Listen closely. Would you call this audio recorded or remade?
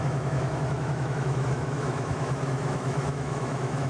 remade